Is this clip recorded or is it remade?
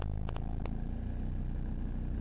recorded